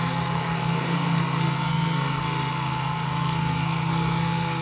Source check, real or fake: fake